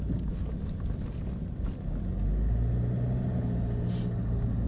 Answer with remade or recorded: recorded